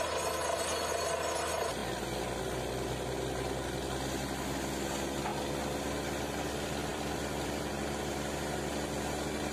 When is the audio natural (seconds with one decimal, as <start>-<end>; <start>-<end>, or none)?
0.0-6.9; 7.7-9.5